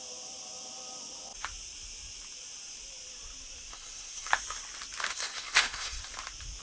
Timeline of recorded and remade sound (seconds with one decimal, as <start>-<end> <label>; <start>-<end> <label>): 0.0-3.7 recorded; 3.7-4.3 remade; 4.3-5.1 recorded; 5.1-6.0 remade; 6.0-6.6 recorded